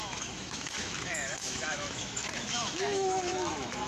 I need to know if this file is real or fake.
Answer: fake